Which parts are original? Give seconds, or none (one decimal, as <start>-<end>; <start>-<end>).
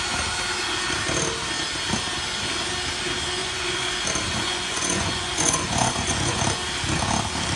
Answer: 0.0-3.4; 3.9-4.3; 6.4-7.6